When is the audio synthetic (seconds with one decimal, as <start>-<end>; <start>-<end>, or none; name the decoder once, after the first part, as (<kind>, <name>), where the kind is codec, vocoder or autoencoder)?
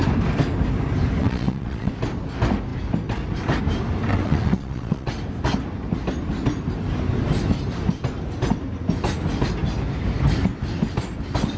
1.2-1.9 (vocoder, WaveNeXt); 4.1-5.1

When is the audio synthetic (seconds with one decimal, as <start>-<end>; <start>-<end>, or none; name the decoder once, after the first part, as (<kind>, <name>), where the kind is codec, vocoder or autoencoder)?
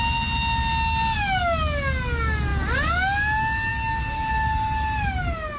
none